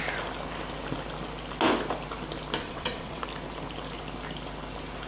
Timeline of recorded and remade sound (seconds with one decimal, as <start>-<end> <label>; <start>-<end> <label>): 0.0-2.6 recorded; 2.6-3.2 remade; 3.2-5.1 recorded